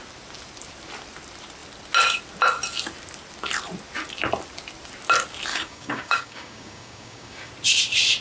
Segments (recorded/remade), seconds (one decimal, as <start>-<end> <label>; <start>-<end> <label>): 0.0-5.5 recorded; 5.5-7.5 remade; 7.5-8.2 recorded